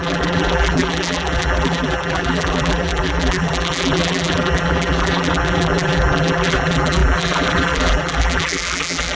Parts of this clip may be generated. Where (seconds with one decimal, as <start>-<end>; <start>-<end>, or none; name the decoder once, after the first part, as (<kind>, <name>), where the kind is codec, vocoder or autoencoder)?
0.0-9.1 (vocoder, BigVGAN v2)